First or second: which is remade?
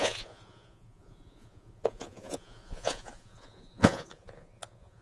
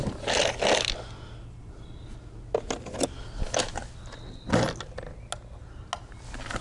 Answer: first